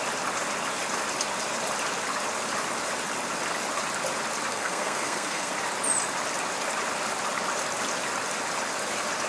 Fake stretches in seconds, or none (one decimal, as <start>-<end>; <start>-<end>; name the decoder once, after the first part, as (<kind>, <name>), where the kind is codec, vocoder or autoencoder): 4.5-5.5 (codec, SNAC)